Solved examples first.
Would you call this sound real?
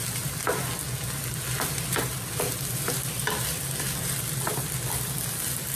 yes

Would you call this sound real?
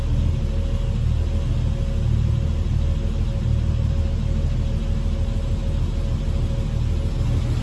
yes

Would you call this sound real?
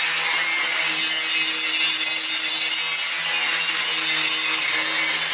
yes